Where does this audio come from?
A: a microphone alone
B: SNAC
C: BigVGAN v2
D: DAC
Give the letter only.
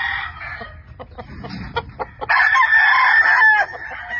A